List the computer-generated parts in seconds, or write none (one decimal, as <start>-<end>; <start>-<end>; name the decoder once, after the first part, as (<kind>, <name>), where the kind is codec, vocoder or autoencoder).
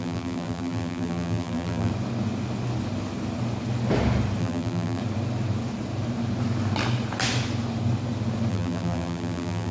0.0-1.9 (vocoder, BigVGAN v2); 4.4-5.0; 8.5-9.7